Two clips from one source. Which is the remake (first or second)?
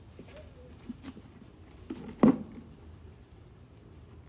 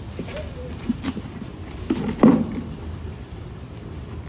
second